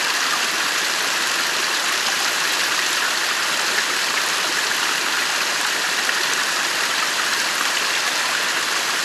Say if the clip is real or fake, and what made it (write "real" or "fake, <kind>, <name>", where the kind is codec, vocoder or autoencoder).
real